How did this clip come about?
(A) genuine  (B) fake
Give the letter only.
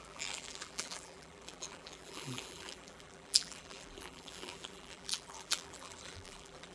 B